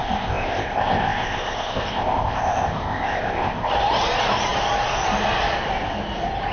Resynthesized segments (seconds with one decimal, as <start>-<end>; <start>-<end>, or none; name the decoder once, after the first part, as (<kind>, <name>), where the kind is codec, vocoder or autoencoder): 0.0-3.7 (codec, ZipCodec)